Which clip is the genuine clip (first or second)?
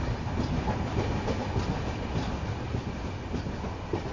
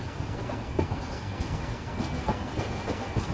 first